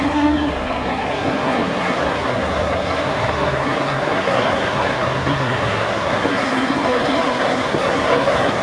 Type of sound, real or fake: fake